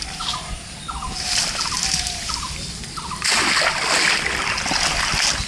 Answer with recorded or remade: recorded